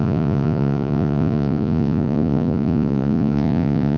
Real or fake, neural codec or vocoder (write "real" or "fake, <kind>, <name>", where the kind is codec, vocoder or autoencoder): fake, vocoder, Vocos